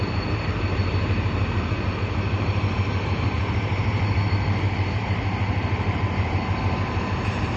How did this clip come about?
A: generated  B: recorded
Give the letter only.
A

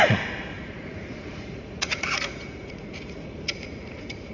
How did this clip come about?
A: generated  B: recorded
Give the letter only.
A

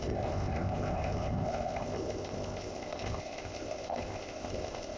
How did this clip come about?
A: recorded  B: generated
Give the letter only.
B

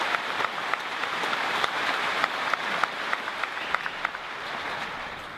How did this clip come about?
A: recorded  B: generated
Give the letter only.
B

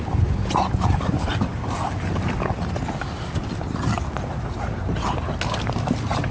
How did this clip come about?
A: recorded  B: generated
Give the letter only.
A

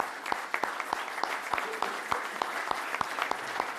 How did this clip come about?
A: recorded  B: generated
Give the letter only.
A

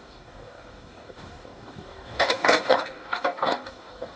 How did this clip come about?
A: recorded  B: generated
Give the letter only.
B